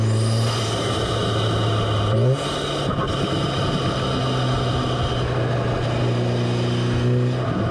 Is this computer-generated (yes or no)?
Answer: no